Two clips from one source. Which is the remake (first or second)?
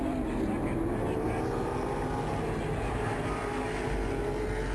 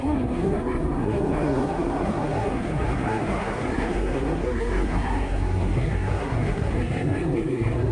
second